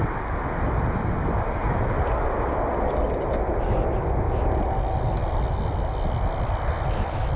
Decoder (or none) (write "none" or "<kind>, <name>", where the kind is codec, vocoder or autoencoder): none